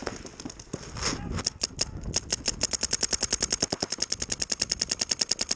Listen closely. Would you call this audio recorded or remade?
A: recorded